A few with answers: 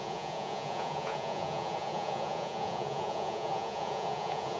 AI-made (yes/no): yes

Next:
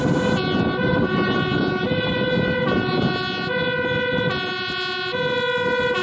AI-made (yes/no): no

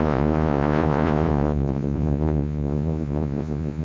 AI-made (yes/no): yes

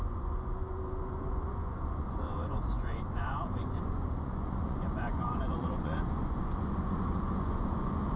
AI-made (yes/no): yes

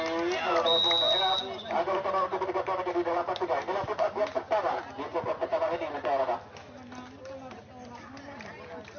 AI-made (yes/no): no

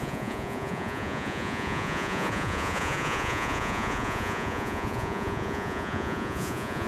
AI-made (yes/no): yes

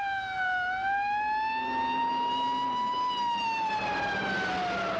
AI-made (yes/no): no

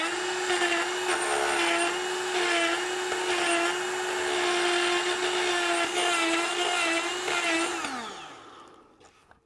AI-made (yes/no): no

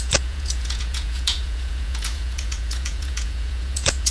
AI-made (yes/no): yes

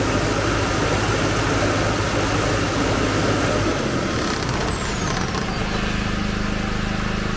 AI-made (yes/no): no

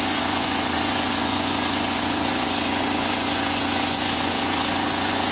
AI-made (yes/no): yes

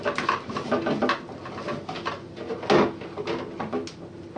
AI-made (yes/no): no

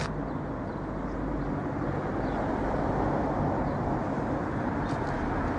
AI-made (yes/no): no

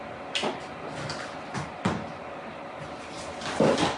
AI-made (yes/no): no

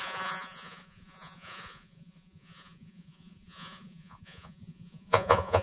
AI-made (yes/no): yes